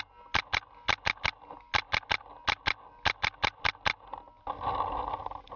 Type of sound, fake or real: real